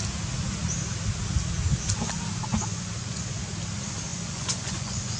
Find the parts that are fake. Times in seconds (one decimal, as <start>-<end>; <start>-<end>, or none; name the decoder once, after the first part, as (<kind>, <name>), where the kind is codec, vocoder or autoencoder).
2.5-3.4 (vocoder, Vocos); 4.1-5.2